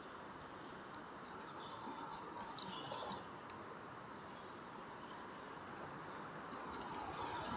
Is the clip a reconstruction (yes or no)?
no